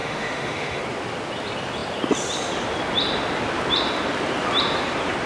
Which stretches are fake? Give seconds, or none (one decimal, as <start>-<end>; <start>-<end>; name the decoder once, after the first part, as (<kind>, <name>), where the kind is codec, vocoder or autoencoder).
0.0-0.8 (autoencoder, DAC-VAE)